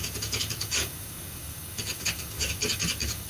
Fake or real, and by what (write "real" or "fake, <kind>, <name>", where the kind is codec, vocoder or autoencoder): fake, codec, DAC